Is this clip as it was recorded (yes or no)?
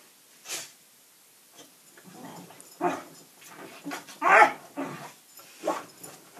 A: yes